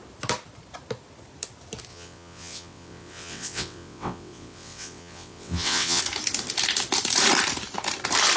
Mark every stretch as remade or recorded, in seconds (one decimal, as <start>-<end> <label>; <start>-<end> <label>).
0.0-1.9 recorded; 1.9-6.0 remade; 6.0-8.4 recorded